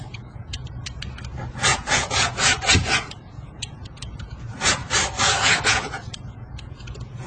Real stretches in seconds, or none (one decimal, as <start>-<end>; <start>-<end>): 0.8-1.5; 4.8-5.4